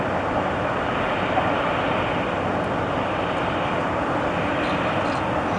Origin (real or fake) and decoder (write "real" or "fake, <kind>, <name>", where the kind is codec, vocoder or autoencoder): real